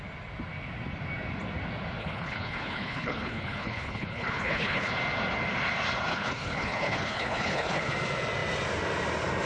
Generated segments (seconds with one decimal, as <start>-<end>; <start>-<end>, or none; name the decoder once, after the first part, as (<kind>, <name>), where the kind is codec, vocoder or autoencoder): 2.0-4.9 (codec, HILCodec); 6.1-7.9